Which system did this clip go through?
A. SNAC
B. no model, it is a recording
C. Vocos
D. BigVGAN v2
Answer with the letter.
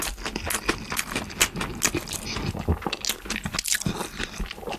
B